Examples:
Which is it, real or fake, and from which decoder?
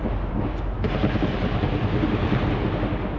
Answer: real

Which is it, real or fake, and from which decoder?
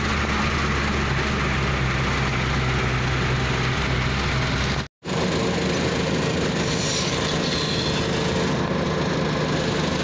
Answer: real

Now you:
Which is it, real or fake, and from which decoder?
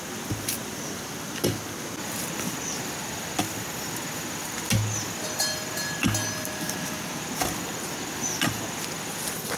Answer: real